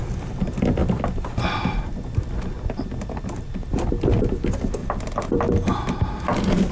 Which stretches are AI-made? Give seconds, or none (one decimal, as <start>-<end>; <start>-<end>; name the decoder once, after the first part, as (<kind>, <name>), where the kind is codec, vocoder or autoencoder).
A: none